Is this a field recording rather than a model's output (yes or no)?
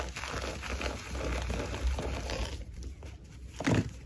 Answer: yes